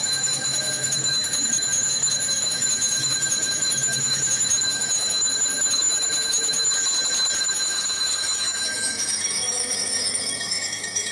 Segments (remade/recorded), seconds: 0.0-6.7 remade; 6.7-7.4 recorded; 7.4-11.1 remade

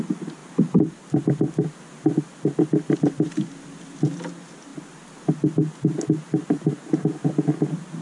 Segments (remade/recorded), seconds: 0.0-8.0 recorded

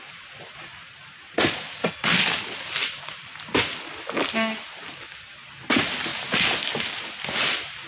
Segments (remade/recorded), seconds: 0.0-7.9 recorded

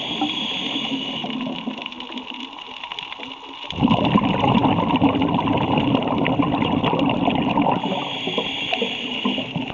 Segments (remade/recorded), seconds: 0.0-9.7 recorded